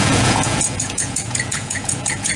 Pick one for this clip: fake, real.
fake